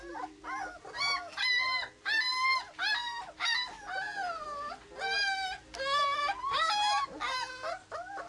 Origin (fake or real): real